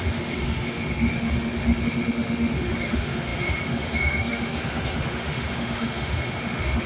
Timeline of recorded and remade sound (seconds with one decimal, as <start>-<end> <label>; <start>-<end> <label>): 0.0-6.9 remade